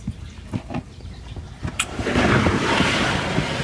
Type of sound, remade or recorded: recorded